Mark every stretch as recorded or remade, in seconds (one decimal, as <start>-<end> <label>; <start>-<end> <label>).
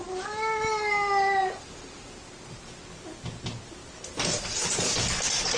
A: 0.0-5.6 recorded